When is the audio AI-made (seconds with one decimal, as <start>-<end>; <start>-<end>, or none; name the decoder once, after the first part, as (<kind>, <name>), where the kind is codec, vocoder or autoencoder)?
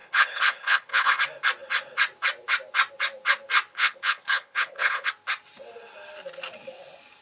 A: 0.0-1.2 (codec, HILCodec); 3.7-5.1